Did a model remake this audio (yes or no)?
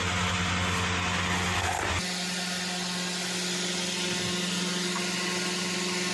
no